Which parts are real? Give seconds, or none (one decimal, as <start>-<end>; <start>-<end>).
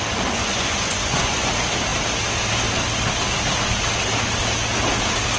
0.0-0.4; 1.5-5.4